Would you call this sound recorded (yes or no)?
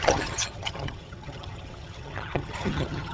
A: no